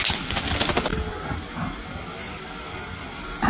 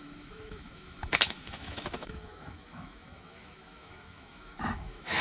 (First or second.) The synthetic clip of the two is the second